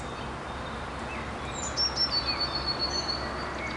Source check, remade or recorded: recorded